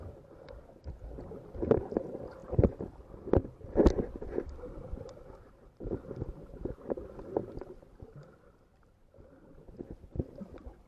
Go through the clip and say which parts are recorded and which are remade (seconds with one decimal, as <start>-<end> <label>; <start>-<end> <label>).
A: 0.0-2.4 recorded; 2.4-3.0 remade; 3.0-10.9 recorded